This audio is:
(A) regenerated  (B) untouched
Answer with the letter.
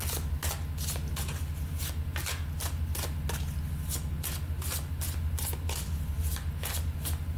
B